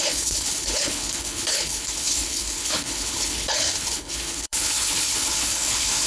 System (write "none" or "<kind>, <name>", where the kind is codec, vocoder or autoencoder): codec, HILCodec